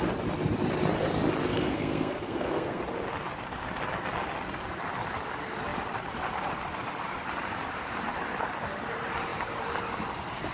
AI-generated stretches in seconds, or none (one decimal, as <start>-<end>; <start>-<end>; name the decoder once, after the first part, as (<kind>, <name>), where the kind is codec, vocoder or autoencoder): 1.4-2.8 (codec, SNAC)